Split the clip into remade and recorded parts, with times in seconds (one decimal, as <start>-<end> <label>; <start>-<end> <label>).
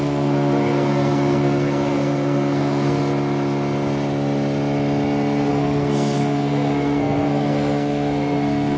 0.0-3.0 remade; 3.0-5.5 recorded; 5.5-8.8 remade